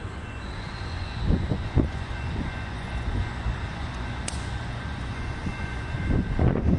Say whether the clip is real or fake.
fake